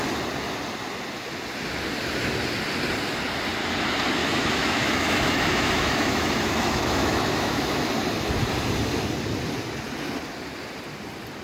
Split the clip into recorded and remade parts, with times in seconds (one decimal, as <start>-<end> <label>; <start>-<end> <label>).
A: 0.0-4.2 recorded; 4.2-7.9 remade; 7.9-11.4 recorded